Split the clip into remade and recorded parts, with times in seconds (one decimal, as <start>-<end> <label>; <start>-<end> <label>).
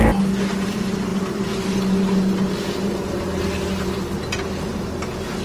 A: 0.0-5.4 recorded